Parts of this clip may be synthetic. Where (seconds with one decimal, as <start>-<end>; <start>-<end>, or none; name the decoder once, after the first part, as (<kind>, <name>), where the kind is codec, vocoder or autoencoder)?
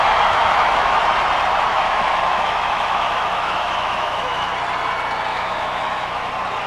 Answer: 0.4-1.0 (autoencoder, DAC-VAE); 1.7-4.5; 5.3-6.3